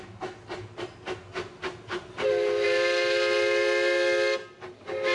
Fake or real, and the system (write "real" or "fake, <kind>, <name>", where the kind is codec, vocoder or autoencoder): real